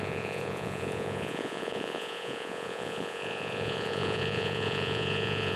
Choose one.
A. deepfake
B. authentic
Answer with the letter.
A